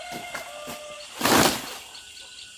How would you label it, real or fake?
real